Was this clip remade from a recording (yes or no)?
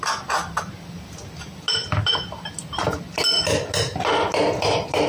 no